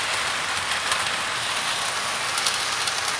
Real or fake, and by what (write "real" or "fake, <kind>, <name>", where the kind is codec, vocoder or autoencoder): real